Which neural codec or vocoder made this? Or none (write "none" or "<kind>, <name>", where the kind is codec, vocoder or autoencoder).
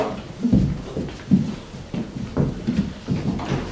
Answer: none